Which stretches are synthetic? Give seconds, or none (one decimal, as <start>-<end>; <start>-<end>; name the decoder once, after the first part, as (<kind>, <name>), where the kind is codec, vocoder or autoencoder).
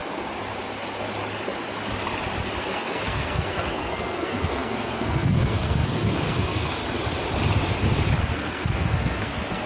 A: 2.6-6.8 (codec, SNAC); 8.2-9.7